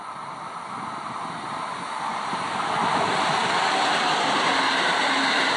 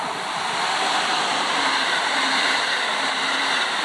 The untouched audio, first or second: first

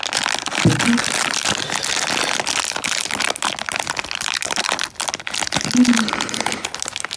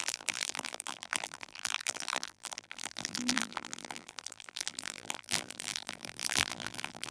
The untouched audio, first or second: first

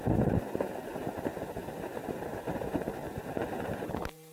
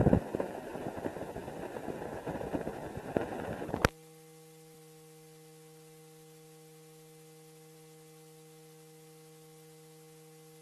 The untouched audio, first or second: second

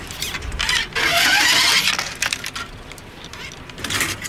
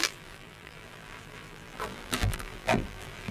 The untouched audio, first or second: first